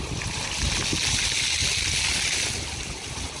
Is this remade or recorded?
recorded